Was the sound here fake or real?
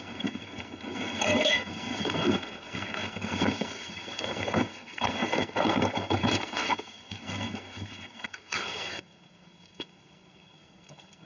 fake